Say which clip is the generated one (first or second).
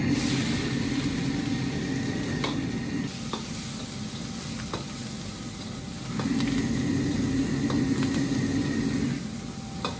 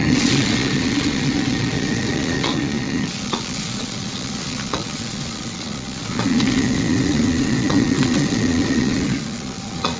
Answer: second